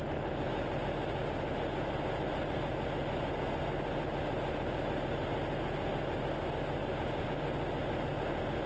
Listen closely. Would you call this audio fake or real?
real